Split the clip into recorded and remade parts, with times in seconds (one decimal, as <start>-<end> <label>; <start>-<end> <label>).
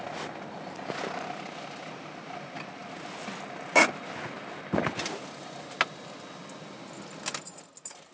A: 0.0-8.1 recorded